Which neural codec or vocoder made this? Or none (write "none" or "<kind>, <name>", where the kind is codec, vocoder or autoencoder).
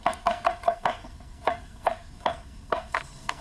codec, SNAC